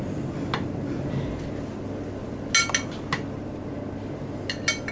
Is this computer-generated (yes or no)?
no